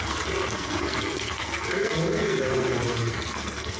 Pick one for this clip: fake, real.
fake